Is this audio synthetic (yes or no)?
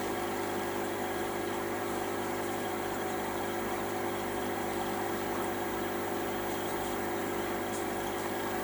no